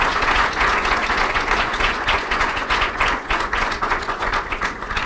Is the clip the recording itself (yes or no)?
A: no